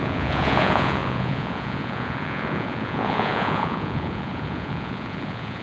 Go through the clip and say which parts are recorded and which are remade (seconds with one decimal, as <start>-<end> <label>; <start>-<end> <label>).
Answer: 0.0-5.6 remade